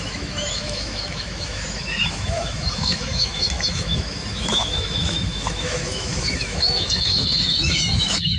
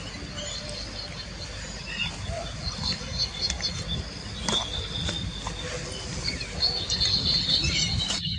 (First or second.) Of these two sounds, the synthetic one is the first